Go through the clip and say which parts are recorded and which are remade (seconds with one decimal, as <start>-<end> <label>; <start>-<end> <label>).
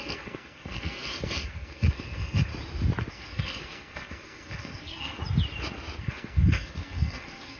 0.0-2.5 remade; 2.5-3.1 recorded; 3.1-5.2 remade; 5.2-6.0 recorded; 6.0-7.6 remade